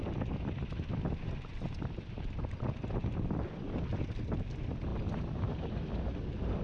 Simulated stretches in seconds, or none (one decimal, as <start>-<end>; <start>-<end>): none